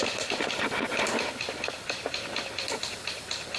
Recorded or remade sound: recorded